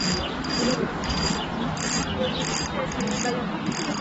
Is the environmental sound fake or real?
real